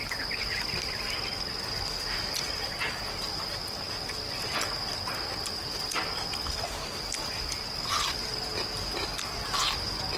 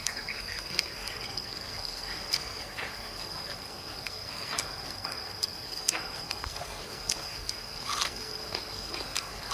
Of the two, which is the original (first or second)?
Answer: first